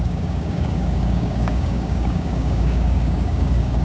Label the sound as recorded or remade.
remade